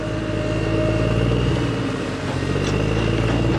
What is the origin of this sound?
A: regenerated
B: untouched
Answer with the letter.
B